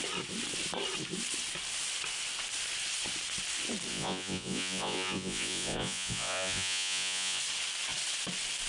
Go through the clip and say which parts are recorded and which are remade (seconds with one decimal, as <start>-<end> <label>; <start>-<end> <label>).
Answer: 0.0-3.9 recorded; 3.9-7.4 remade; 7.4-8.7 recorded